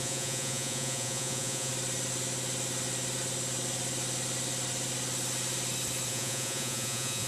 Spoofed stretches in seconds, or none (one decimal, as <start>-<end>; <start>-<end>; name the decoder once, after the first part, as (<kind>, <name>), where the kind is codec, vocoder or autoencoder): 0.0-1.7 (vocoder, Vocos); 6.1-7.3